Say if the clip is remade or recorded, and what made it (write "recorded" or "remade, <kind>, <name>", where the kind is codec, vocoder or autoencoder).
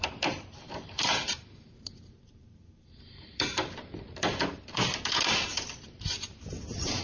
remade, vocoder, BigVGAN v2